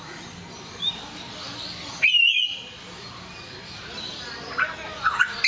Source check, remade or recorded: recorded